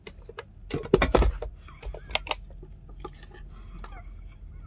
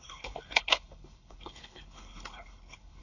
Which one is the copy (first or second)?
second